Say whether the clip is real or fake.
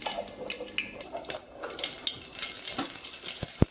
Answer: real